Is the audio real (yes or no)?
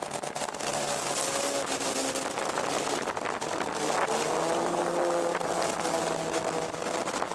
yes